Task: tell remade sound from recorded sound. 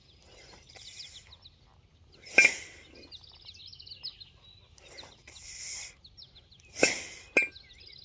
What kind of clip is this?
recorded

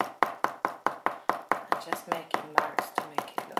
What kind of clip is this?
remade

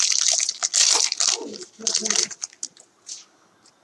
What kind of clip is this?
recorded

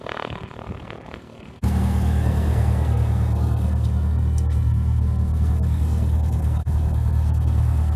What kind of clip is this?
remade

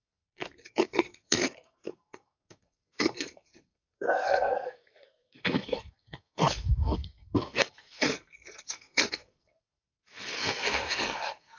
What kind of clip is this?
remade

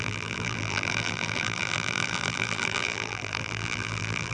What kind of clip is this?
remade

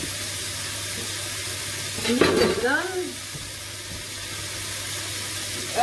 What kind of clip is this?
recorded